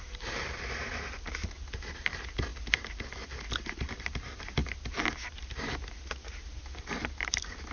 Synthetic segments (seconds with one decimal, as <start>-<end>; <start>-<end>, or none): 0.0-2.5; 3.5-4.6; 5.4-7.7